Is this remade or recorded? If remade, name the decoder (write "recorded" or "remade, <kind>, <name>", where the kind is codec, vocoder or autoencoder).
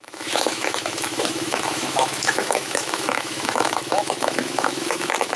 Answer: remade, autoencoder, DAC-VAE